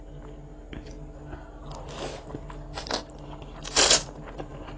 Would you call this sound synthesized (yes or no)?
no